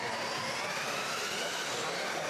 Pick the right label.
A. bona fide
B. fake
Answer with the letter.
A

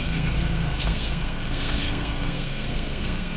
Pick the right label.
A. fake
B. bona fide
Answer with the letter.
A